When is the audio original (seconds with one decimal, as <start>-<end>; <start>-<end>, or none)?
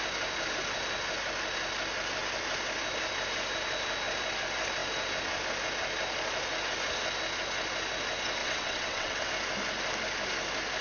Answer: 0.0-8.4; 9.3-10.8